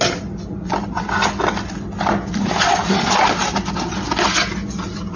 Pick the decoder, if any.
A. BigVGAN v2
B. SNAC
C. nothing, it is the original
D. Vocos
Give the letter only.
C